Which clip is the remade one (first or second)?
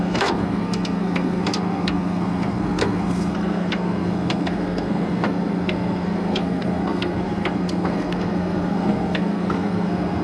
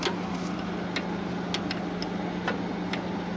first